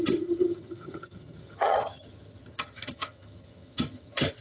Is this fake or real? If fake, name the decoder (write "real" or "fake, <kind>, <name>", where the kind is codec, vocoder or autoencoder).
fake, vocoder, HiFi-GAN